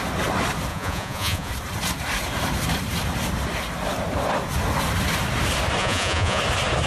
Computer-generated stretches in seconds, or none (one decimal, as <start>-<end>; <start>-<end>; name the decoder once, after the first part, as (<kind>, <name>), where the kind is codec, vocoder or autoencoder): 0.7-1.5 (vocoder, Vocos); 5.8-6.4